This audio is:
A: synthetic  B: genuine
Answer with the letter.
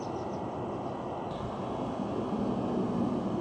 B